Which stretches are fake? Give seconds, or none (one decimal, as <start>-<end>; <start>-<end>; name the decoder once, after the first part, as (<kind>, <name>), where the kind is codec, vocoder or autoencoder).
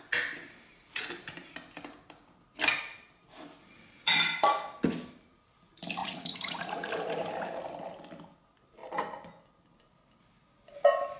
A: 6.0-6.9 (vocoder, Vocos)